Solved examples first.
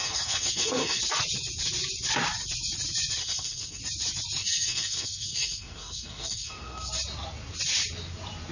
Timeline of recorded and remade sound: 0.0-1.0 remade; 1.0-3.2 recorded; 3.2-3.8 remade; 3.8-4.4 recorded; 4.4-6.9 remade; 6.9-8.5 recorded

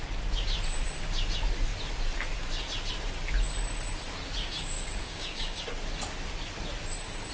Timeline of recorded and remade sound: 0.0-4.4 recorded; 4.4-5.6 remade; 5.6-7.3 recorded